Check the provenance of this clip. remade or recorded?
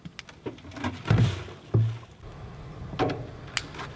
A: recorded